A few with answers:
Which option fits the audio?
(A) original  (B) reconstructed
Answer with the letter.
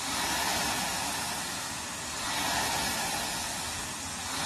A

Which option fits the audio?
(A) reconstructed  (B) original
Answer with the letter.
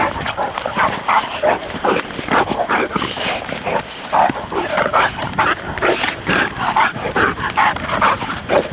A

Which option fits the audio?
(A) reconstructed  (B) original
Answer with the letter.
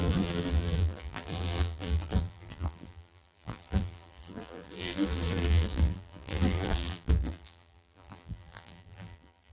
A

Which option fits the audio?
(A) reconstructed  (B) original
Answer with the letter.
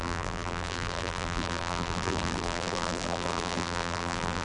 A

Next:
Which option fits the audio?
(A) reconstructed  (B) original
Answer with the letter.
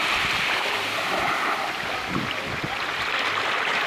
A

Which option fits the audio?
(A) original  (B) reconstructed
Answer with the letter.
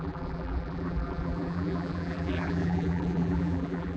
B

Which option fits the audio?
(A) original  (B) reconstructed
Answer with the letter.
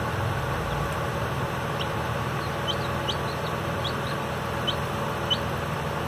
A